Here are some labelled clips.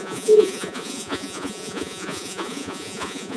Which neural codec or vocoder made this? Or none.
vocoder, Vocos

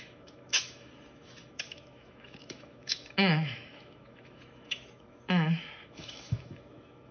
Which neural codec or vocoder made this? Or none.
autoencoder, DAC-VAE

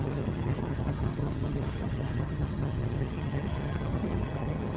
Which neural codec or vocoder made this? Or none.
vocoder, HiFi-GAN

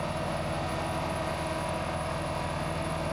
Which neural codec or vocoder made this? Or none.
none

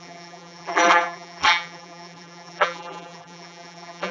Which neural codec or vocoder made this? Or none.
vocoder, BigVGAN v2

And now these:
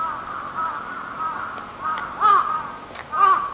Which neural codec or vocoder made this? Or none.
none